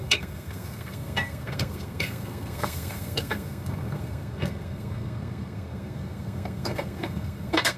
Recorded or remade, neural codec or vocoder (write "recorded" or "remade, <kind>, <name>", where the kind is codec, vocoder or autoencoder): remade, codec, SNAC